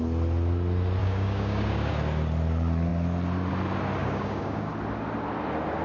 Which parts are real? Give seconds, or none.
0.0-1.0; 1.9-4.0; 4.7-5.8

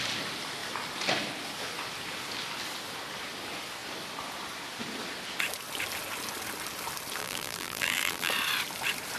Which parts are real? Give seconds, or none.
0.0-7.2; 8.3-9.2

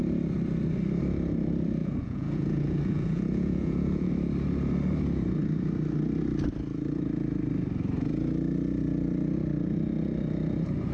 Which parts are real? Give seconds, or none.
0.0-1.8; 4.1-10.9

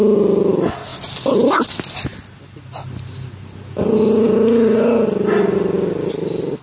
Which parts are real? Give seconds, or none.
0.0-0.9; 1.6-2.1; 6.1-6.6